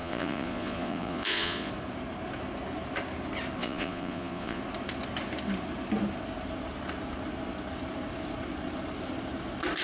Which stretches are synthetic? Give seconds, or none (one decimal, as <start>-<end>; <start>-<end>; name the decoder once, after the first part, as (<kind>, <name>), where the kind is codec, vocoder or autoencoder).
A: 0.0-1.7 (vocoder, Vocos); 3.6-4.6